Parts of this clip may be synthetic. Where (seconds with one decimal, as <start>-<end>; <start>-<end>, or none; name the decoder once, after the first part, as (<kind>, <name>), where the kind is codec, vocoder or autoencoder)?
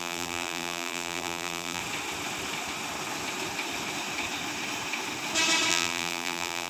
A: 0.0-1.8 (vocoder, BigVGAN v2); 5.7-6.7